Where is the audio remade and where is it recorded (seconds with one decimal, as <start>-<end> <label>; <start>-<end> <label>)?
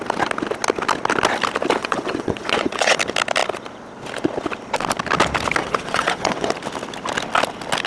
0.0-1.8 recorded; 1.8-3.0 remade; 3.0-5.6 recorded; 5.6-6.5 remade; 6.5-7.9 recorded